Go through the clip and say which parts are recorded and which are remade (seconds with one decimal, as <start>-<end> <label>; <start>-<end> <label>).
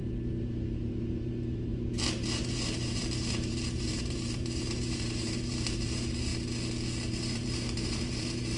0.0-6.3 remade; 6.3-7.1 recorded; 7.1-8.6 remade